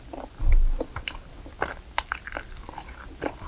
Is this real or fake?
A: real